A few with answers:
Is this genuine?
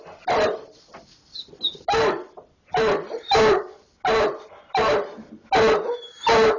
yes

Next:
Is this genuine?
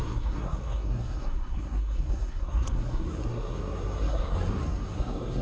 no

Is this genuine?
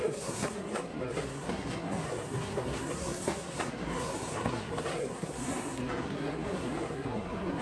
no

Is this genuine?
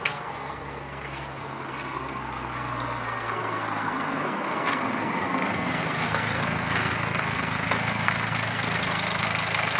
no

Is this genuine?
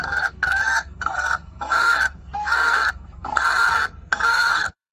no